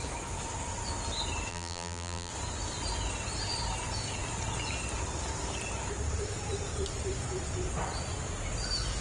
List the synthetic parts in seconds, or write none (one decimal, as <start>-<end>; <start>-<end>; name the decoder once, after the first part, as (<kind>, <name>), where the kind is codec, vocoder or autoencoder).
1.5-2.3 (vocoder, BigVGAN v2)